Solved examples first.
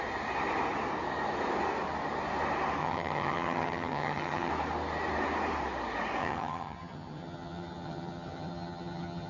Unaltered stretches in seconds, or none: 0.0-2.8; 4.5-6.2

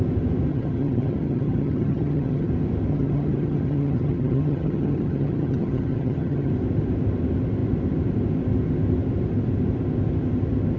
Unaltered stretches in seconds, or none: 0.0-0.5; 2.5-2.9; 6.5-10.8

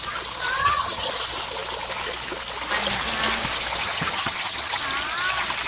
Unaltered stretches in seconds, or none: 0.0-0.6; 1.1-3.8; 4.8-5.7

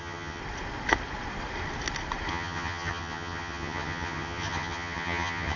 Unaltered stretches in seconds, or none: 0.4-2.3

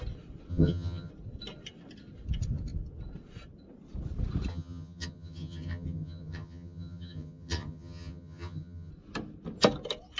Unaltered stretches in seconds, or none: 0.0-0.5; 1.1-4.5; 8.9-10.2